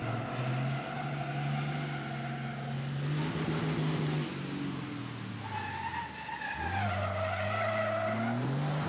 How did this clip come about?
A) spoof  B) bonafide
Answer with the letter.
B